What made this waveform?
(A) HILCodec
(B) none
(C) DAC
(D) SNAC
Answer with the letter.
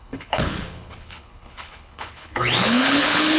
A